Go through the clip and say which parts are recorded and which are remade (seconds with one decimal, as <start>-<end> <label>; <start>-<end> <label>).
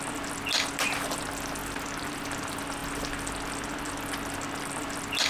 0.0-5.3 recorded